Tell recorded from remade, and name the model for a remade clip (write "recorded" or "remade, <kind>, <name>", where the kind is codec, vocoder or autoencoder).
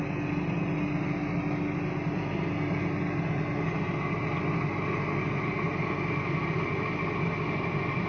recorded